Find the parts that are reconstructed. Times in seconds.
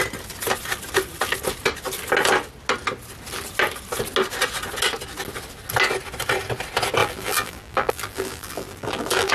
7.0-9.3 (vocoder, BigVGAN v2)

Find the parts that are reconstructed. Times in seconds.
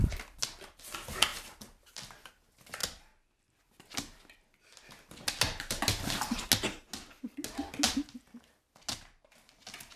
1.3-2.3 (vocoder, BigVGAN v2)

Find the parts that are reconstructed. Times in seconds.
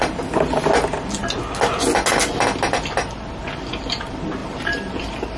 4.4-5.4 (vocoder, BigVGAN v2)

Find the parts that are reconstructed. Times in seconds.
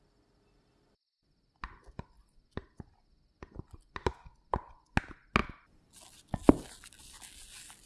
none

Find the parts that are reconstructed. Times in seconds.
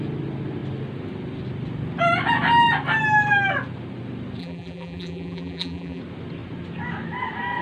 4.4-6.0 (vocoder, BigVGAN v2)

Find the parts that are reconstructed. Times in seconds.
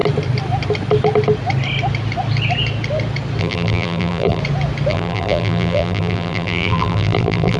3.4-4.4 (vocoder, BigVGAN v2); 4.9-7.6